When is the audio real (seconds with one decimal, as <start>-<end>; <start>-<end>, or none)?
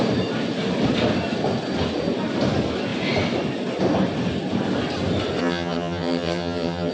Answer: 0.0-5.4